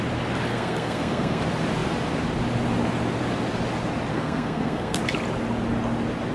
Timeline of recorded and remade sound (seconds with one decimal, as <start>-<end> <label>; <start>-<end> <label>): 0.0-0.5 recorded; 0.5-1.4 remade; 1.4-4.1 recorded; 4.1-5.0 remade; 5.0-6.3 recorded